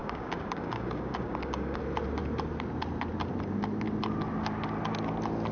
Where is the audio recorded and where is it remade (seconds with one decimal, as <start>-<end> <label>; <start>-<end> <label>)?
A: 0.0-1.8 remade; 1.8-5.5 recorded